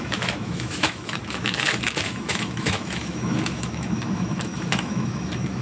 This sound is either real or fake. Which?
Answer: fake